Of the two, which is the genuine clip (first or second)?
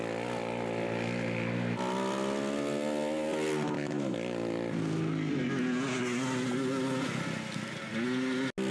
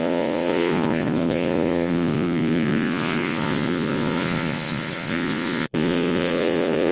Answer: first